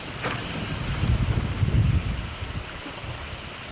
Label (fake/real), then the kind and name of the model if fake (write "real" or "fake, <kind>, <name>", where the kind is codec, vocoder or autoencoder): real